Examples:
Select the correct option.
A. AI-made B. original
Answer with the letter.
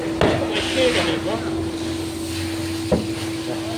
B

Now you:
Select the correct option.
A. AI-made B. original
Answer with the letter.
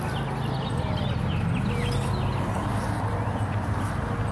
B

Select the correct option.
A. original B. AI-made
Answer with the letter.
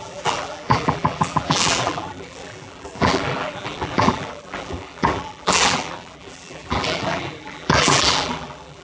B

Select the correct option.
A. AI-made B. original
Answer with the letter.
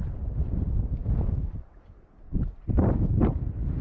B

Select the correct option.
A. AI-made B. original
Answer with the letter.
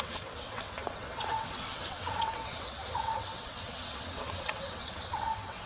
A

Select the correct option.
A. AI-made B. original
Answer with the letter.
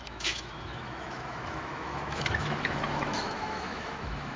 A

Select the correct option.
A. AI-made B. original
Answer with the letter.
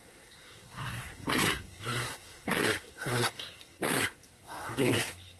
A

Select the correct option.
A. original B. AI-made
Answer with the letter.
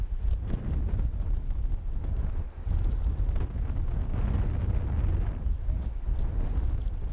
A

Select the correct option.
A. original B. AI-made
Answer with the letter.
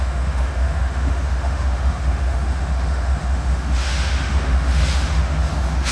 B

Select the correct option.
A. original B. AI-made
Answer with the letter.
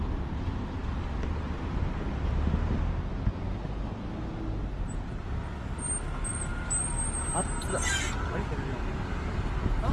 A